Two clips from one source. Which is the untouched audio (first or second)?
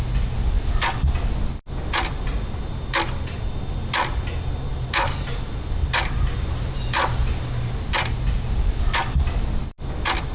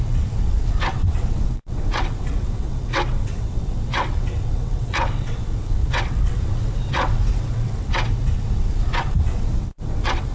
first